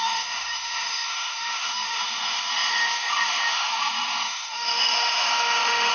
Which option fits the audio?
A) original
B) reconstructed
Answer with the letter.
B